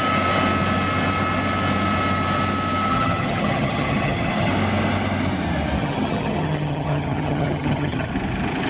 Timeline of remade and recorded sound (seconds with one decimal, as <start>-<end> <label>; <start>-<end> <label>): 0.0-2.9 recorded; 2.9-4.5 remade; 4.5-5.8 recorded; 5.8-8.1 remade; 8.1-8.7 recorded